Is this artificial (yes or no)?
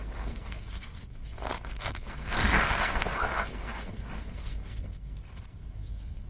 yes